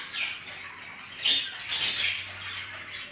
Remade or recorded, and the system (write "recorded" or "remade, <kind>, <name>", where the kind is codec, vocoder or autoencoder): recorded